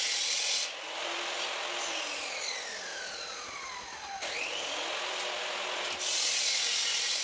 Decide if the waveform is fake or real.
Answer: real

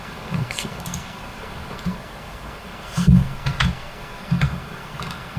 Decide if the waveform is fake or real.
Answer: fake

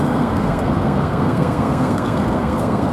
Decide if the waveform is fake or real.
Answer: fake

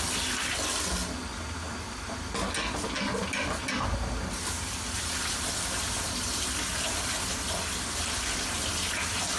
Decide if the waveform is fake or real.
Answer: real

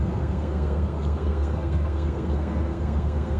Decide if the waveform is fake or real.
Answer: fake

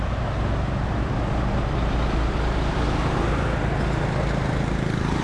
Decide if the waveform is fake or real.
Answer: real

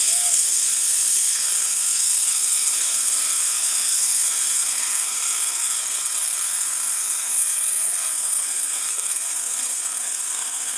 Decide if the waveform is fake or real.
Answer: fake